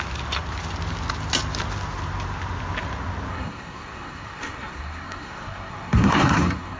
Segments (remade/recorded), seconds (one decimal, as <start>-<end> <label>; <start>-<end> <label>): 0.0-3.3 recorded; 3.3-6.8 remade